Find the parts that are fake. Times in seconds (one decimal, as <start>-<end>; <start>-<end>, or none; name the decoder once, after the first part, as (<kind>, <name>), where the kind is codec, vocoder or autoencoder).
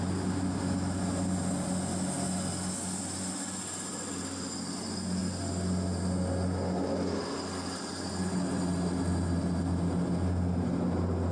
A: none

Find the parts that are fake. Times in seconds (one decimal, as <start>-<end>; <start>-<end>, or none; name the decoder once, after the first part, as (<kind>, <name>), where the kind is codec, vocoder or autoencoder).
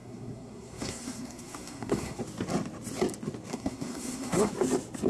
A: 0.0-2.2 (codec, SNAC); 3.5-4.5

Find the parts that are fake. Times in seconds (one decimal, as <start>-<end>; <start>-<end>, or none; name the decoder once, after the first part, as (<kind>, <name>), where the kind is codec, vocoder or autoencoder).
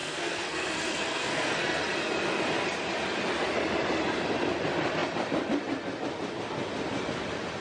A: 0.0-1.8 (codec, SNAC)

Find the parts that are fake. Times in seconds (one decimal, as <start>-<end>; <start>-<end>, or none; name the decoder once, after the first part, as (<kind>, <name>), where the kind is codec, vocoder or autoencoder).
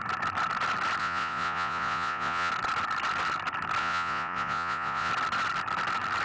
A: 1.0-2.5 (vocoder, Vocos); 3.8-5.1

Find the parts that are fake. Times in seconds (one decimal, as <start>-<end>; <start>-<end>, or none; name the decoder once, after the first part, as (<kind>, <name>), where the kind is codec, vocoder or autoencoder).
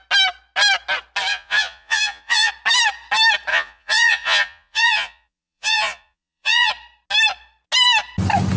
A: 1.3-2.5 (vocoder, Vocos); 3.5-6.7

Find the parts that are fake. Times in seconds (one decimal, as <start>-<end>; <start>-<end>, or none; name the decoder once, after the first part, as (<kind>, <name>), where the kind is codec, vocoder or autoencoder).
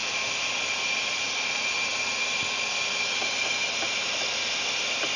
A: 0.0-0.5 (autoencoder, DAC-VAE)